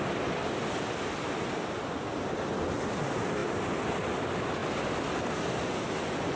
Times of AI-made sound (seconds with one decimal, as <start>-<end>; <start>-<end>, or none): none